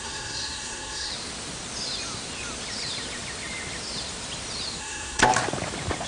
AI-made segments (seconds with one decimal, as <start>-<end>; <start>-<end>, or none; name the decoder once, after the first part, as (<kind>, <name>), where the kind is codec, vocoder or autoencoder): 0.0-1.1 (codec, SNAC); 4.8-5.2